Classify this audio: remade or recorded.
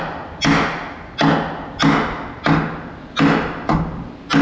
recorded